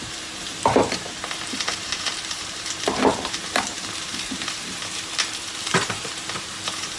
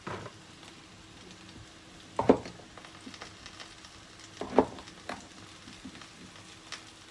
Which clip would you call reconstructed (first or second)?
first